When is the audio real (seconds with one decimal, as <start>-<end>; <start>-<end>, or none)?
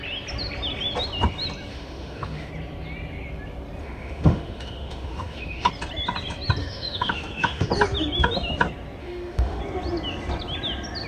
0.0-1.7; 2.5-3.8; 5.7-6.6; 7.7-9.0; 9.6-11.1